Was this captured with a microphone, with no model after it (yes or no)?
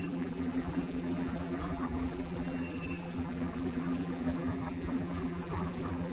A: no